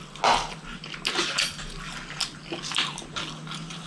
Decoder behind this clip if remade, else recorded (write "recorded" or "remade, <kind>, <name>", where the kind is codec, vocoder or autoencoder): recorded